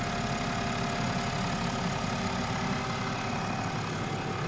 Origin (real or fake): real